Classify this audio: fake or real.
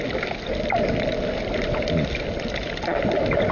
real